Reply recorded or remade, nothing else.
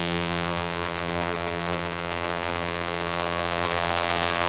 remade